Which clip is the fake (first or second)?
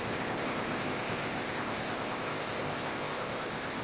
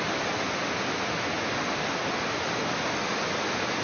first